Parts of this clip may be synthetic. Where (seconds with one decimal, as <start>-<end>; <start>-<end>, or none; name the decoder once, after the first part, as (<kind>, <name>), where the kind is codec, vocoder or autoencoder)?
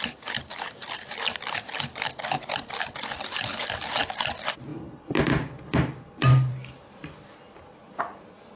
4.7-8.0 (vocoder, BigVGAN v2)